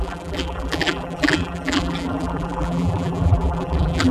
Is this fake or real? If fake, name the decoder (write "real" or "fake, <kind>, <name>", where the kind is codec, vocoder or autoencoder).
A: fake, vocoder, BigVGAN v2